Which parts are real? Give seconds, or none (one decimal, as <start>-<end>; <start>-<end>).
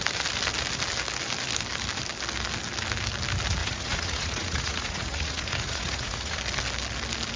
0.0-3.6; 6.4-7.4